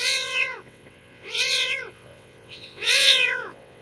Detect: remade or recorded remade